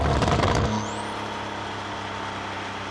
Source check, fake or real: real